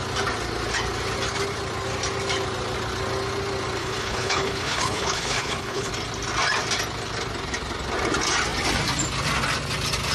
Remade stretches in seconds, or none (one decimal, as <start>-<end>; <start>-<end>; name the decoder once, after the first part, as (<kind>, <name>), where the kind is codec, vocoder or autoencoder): 3.8-5.9 (codec, HILCodec)